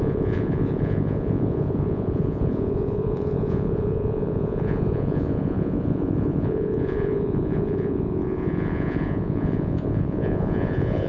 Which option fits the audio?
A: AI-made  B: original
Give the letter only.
A